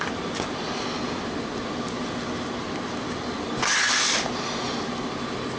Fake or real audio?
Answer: real